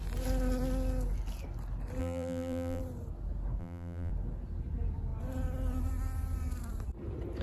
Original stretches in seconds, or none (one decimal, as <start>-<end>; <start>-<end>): 0.0-2.0; 2.8-3.6; 4.1-7.4